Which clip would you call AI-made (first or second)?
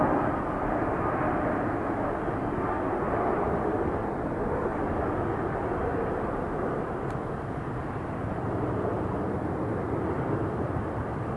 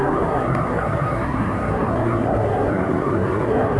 second